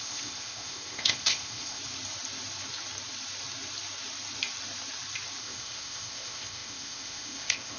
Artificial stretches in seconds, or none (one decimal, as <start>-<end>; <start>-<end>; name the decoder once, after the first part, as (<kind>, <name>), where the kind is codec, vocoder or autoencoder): 0.0-1.8 (codec, ZipCodec); 5.4-7.8